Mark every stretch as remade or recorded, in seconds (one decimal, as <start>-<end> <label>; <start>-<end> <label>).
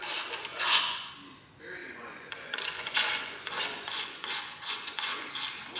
0.0-0.5 recorded; 0.5-1.1 remade; 1.1-1.8 recorded; 1.8-5.3 remade; 5.3-5.8 recorded